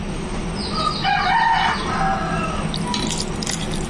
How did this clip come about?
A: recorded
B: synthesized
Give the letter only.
A